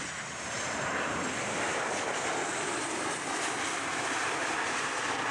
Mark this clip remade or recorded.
recorded